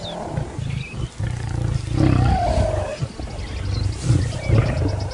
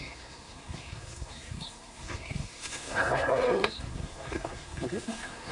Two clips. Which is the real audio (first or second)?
first